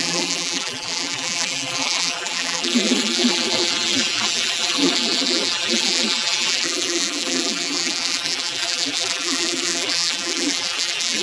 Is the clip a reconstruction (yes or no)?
yes